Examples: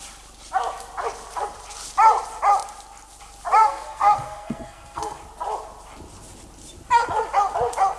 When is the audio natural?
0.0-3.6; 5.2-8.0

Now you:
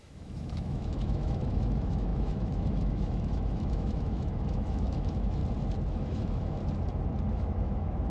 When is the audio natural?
5.4-5.9; 6.6-7.3

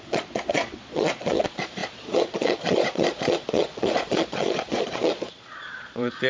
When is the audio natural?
none

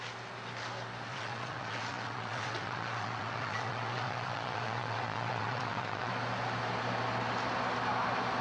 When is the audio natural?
0.0-1.1; 6.1-8.4

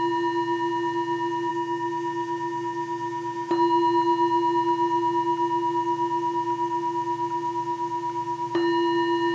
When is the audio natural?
0.0-1.5; 3.5-9.3

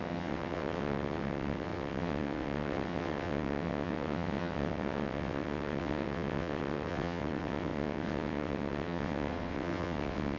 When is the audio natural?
none